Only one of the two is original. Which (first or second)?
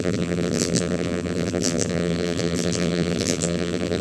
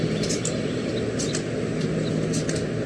second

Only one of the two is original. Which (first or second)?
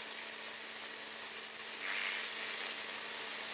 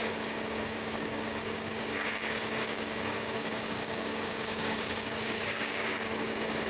first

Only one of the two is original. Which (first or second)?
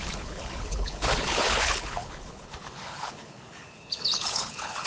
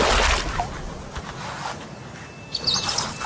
second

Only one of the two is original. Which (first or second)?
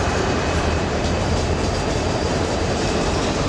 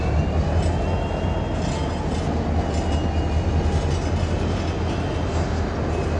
second